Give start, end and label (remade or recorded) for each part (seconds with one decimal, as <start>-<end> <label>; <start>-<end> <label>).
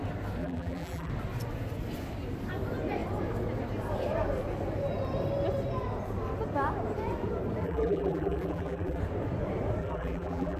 0.0-0.4 recorded; 0.4-1.1 remade; 1.1-7.6 recorded; 7.6-9.0 remade; 9.0-9.8 recorded; 9.8-10.6 remade